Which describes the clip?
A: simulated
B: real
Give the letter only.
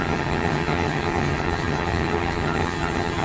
A